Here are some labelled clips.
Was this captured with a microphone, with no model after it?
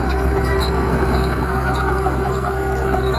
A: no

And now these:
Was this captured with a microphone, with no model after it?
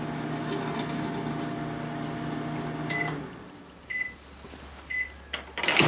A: yes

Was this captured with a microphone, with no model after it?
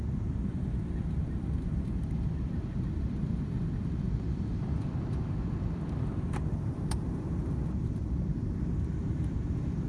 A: no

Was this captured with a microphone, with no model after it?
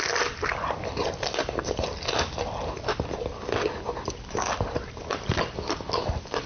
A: yes